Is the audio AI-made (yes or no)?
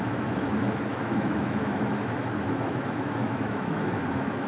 yes